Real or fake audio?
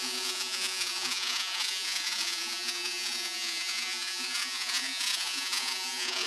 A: fake